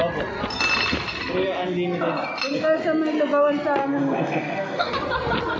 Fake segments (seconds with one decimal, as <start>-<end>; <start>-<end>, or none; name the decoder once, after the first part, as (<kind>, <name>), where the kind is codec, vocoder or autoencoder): 3.8-4.9 (codec, SNAC)